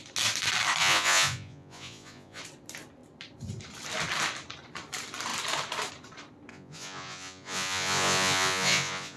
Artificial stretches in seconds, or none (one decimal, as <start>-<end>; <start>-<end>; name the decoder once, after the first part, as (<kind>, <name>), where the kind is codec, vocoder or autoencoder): 0.8-2.4 (vocoder, Vocos); 6.5-9.2